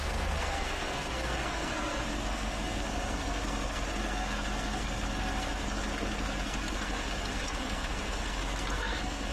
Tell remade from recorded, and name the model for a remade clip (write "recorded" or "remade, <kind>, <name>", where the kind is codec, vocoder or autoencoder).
remade, codec, SNAC